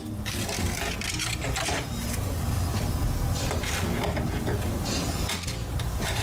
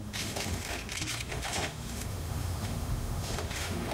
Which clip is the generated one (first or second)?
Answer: second